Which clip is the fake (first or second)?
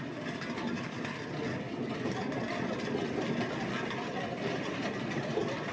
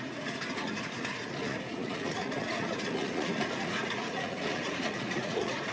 second